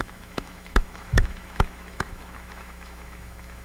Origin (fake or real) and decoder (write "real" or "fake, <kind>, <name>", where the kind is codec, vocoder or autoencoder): fake, autoencoder, DAC-VAE